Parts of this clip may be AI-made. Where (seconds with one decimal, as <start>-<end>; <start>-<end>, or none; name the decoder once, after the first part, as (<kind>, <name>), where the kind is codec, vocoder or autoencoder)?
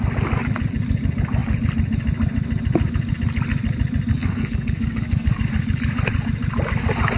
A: 4.1-5.4 (codec, SNAC)